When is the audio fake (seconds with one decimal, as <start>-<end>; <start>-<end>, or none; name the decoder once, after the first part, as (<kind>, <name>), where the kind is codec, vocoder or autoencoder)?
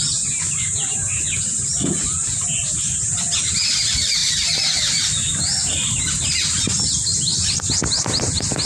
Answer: none